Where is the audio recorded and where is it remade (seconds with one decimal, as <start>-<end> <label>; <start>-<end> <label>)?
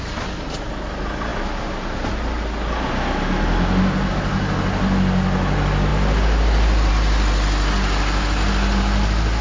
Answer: 0.0-9.4 recorded